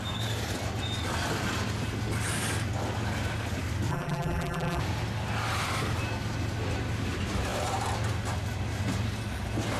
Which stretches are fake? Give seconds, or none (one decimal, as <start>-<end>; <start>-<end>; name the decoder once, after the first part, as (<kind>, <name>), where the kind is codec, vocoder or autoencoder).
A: 3.9-4.8 (vocoder, BigVGAN v2)